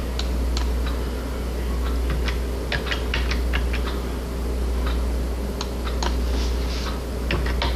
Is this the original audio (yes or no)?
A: yes